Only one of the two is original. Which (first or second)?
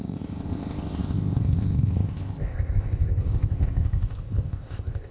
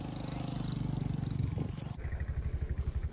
second